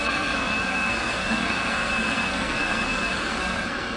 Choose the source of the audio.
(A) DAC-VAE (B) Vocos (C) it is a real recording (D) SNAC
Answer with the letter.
D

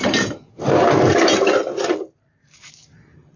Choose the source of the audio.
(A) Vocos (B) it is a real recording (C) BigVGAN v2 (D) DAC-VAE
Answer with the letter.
C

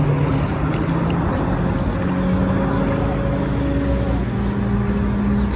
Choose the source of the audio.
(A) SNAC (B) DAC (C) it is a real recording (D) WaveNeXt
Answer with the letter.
C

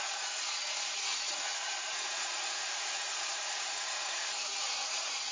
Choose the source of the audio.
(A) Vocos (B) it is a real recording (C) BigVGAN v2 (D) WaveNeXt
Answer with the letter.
A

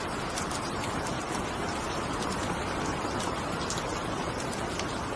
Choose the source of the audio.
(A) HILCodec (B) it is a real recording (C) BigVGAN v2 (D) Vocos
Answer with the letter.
B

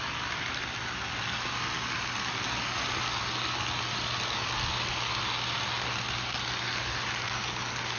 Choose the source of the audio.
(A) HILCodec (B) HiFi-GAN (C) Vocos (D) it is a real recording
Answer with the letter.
D